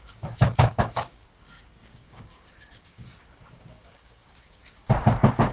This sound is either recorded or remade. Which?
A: remade